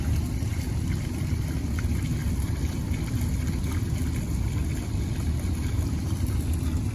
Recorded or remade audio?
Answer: recorded